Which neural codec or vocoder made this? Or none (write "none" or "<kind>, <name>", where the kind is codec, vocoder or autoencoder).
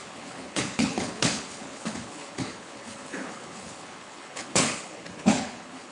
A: codec, HILCodec